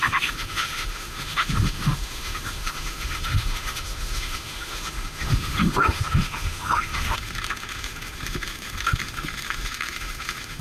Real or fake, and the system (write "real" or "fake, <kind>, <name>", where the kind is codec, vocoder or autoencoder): fake, autoencoder, DAC-VAE